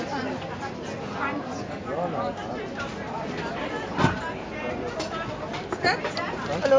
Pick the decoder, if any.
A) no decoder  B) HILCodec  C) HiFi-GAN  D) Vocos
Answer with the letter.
A